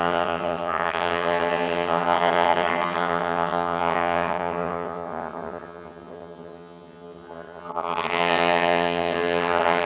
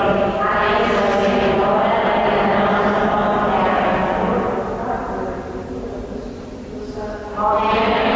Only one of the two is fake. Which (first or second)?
first